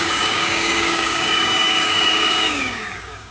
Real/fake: fake